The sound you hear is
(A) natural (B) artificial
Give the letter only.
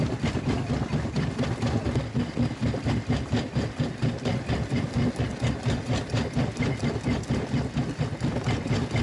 A